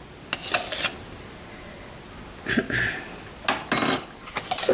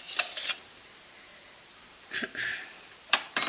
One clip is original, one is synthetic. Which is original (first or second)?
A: first